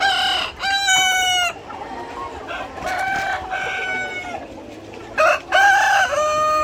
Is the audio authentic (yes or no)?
yes